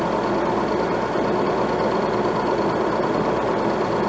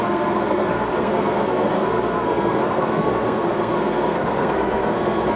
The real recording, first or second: first